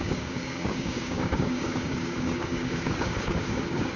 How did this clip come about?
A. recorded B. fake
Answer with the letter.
B